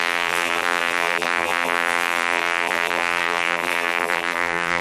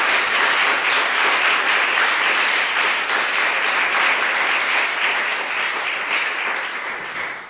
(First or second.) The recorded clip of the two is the second